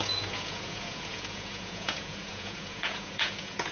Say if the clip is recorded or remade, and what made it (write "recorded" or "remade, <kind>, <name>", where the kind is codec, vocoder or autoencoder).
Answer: remade, vocoder, Vocos